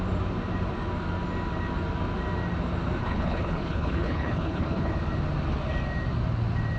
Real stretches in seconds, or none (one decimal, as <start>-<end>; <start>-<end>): 0.0-3.0; 4.9-6.8